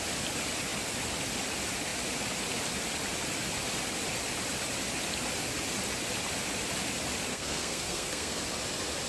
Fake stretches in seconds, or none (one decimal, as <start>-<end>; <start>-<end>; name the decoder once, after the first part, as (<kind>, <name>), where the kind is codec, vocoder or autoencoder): 7.3-8.4 (codec, SNAC)